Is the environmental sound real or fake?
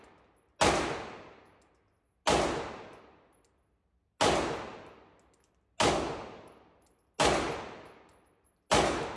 real